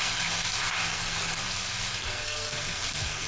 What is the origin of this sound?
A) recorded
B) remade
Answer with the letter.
B